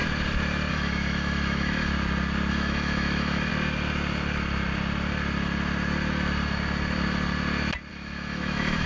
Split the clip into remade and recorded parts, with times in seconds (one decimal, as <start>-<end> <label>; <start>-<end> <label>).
0.0-0.7 recorded; 0.7-1.9 remade; 1.9-2.5 recorded; 2.5-3.5 remade; 3.5-7.9 recorded; 7.9-8.9 remade